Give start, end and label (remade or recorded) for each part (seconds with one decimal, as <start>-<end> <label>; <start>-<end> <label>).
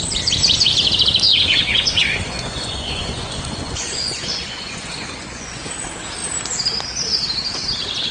0.0-1.3 recorded; 1.3-5.7 remade; 5.7-8.1 recorded